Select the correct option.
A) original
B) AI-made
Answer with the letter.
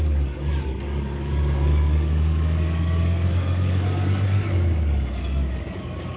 B